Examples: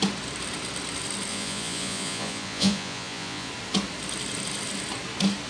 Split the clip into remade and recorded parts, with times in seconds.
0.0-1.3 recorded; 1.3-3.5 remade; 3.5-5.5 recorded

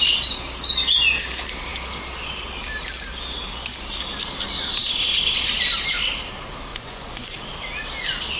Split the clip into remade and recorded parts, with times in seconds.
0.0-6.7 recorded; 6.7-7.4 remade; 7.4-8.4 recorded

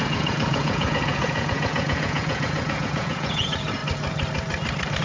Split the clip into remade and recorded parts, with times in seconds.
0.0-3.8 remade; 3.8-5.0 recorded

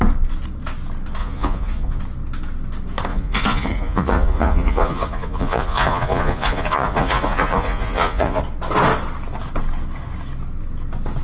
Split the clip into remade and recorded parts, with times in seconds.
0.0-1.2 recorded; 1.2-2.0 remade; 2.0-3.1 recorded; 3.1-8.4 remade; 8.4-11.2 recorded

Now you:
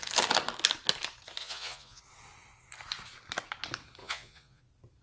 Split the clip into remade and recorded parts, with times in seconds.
0.0-1.4 recorded; 1.4-2.0 remade; 2.0-4.0 recorded; 4.0-4.6 remade; 4.6-5.0 recorded

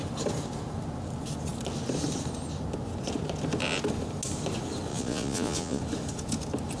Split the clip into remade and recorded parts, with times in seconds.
0.0-4.9 recorded; 4.9-5.8 remade; 5.8-6.8 recorded